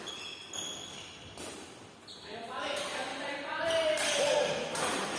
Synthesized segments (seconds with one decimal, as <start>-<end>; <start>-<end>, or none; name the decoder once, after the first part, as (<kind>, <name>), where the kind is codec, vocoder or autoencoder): 1.2-2.0 (vocoder, BigVGAN v2); 3.1-5.2